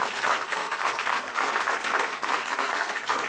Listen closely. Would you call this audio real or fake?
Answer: fake